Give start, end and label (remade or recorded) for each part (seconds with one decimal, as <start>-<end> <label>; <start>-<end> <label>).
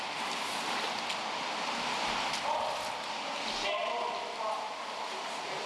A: 0.0-5.7 recorded